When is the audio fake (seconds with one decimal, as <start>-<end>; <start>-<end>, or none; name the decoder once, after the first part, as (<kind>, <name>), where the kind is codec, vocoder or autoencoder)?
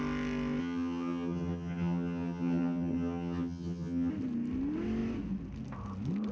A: 0.6-4.1 (vocoder, HiFi-GAN)